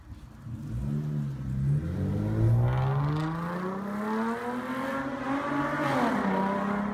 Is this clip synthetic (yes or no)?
no